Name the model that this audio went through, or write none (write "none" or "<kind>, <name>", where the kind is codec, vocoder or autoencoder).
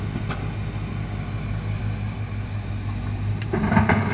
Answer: none